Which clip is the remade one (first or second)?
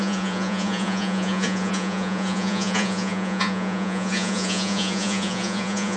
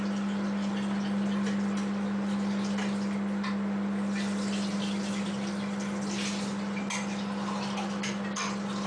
first